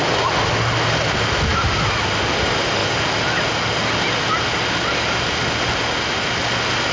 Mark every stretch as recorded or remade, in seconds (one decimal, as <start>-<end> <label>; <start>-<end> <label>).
0.0-6.9 recorded